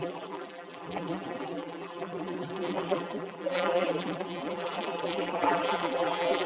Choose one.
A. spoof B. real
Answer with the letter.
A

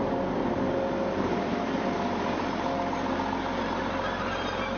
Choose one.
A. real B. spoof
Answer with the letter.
A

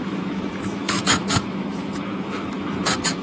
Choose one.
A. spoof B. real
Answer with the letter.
A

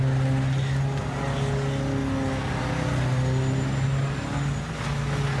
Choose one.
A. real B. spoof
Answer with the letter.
A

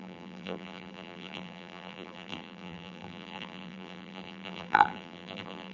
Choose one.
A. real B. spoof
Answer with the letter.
B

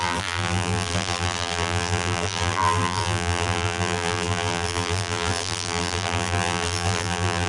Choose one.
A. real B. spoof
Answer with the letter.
B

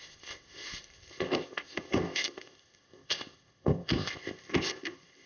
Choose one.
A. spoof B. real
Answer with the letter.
A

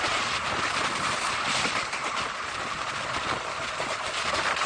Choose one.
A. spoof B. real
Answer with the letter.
B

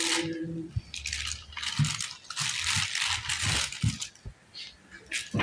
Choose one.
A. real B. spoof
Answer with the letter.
A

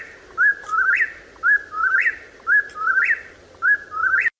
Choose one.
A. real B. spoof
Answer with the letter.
A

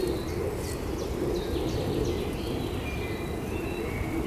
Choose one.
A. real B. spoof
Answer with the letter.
A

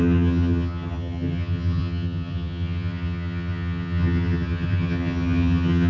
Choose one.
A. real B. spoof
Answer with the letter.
B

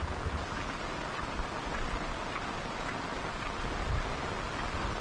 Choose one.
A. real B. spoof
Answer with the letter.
A